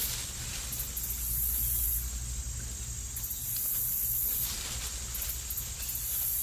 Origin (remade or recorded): recorded